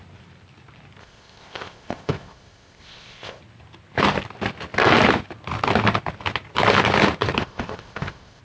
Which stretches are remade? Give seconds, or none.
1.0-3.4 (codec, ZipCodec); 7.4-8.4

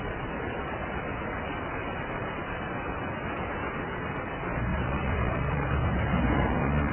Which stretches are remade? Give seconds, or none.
4.7-6.9 (vocoder, Vocos)

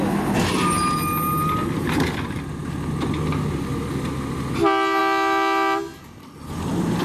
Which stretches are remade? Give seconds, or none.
none

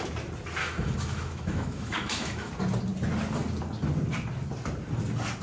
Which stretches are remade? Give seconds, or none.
0.6-2.5 (autoencoder, DAC-VAE)